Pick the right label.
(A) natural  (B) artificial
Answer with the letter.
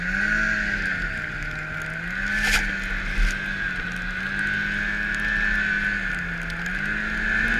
A